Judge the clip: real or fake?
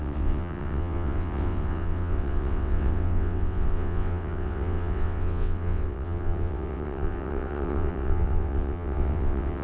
fake